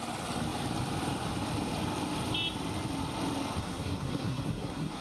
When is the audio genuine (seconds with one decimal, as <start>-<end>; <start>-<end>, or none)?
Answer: 0.0-3.6